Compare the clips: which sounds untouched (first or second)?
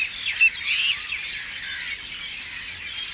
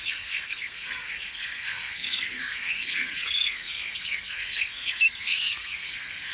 first